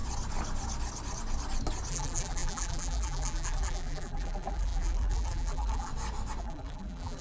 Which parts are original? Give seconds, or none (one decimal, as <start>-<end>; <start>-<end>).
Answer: 0.0-1.9; 5.9-6.4